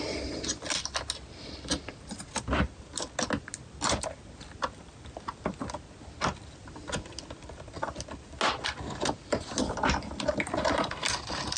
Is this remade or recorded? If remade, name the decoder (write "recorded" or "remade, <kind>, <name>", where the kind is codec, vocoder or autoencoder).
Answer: recorded